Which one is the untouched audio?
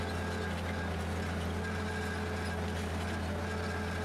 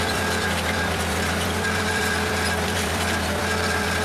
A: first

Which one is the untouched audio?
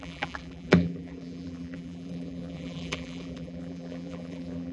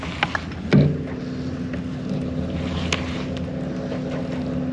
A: second